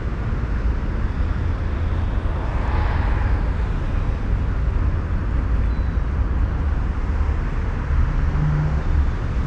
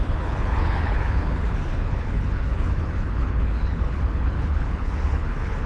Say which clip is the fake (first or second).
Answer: second